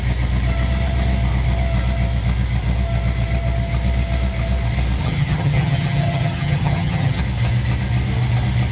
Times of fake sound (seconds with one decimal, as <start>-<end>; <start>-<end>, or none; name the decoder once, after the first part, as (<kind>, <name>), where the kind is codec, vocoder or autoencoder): 5.0-7.2 (vocoder, HiFi-GAN)